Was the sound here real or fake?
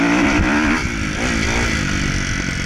real